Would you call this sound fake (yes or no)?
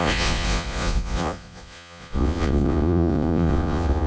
yes